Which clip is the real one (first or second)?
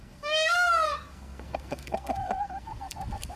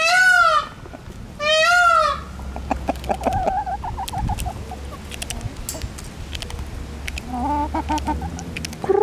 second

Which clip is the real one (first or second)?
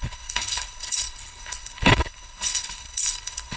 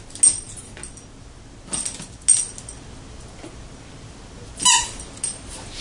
second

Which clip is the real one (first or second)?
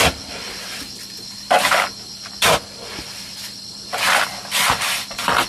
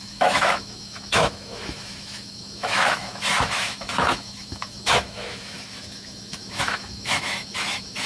first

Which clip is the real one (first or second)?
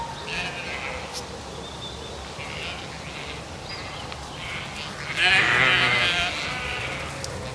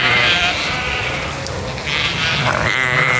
first